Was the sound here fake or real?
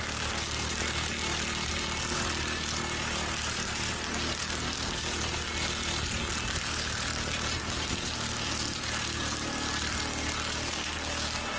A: real